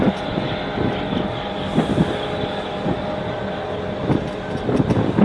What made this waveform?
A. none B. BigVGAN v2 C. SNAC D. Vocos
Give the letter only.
A